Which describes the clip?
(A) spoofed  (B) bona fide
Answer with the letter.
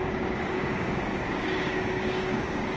A